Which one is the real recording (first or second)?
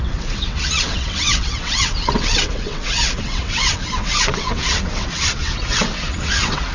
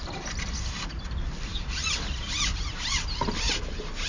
second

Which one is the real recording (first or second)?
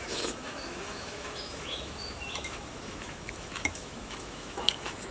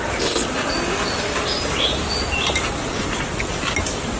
second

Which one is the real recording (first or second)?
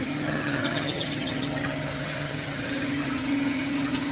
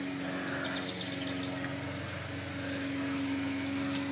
second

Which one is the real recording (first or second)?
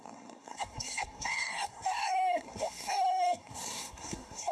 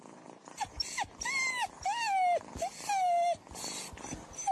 second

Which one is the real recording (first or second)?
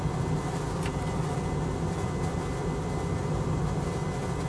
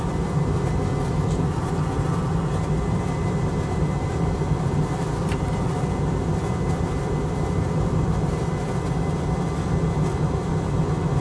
first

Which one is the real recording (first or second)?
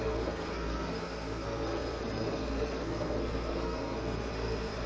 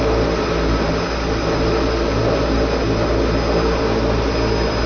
second